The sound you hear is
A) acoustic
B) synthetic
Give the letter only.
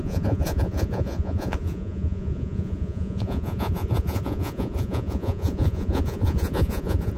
B